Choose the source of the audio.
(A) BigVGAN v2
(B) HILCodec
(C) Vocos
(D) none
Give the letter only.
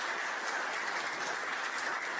D